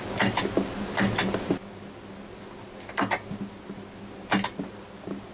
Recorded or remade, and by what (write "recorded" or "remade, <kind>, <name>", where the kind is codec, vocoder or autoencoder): recorded